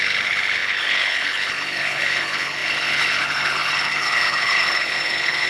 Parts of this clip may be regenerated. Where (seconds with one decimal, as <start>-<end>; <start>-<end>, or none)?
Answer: 0.0-5.5